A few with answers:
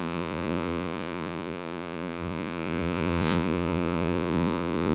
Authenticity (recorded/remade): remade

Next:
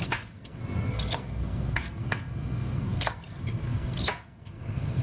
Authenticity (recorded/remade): remade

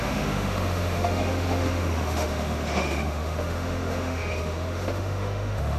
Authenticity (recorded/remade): remade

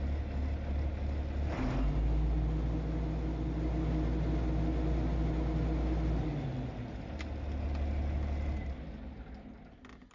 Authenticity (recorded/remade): recorded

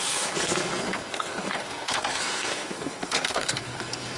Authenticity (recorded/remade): remade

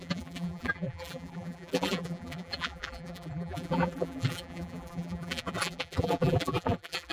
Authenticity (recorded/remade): remade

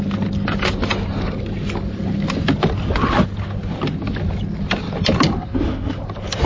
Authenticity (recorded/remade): recorded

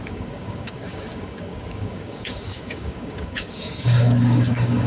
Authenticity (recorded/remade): remade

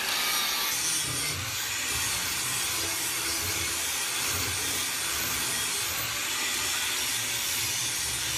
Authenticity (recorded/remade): recorded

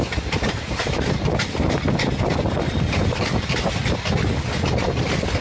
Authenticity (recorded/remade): recorded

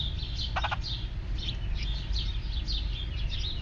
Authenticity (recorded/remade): recorded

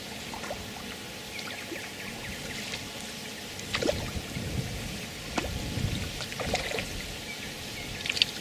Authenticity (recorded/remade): recorded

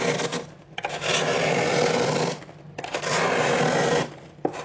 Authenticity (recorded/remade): recorded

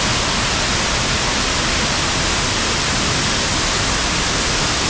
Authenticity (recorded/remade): recorded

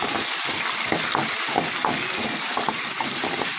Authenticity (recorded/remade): recorded